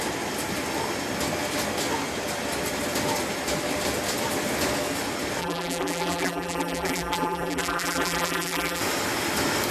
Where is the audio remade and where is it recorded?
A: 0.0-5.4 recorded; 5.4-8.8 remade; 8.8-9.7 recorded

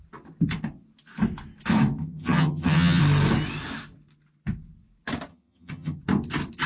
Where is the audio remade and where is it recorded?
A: 0.0-2.0 recorded; 2.0-3.0 remade; 3.0-5.3 recorded; 5.3-6.0 remade; 6.0-6.7 recorded